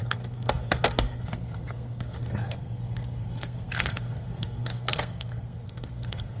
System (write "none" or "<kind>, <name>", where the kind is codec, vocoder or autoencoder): codec, SNAC